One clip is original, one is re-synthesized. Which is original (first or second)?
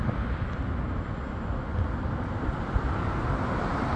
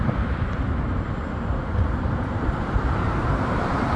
first